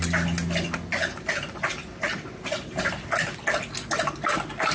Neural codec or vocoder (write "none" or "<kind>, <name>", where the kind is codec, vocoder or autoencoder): none